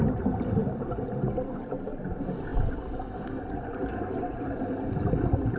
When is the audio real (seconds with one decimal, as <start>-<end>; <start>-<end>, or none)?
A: 0.0-5.6